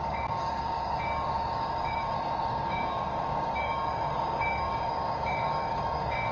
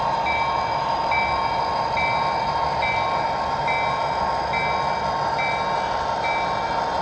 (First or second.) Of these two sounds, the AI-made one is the first